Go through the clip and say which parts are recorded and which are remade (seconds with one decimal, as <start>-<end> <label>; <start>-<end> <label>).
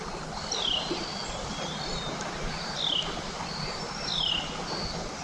0.0-5.2 recorded